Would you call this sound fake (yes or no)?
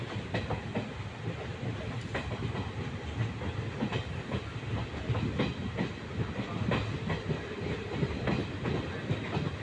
no